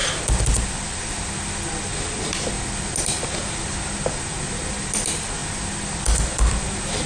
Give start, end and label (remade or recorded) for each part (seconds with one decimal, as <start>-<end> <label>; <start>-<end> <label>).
0.0-7.1 recorded